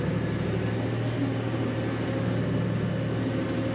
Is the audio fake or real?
real